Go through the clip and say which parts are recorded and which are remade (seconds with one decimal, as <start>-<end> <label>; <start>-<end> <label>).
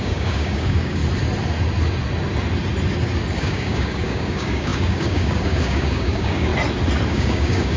0.0-1.0 remade; 1.0-3.3 recorded; 3.3-6.5 remade; 6.5-7.1 recorded; 7.1-7.8 remade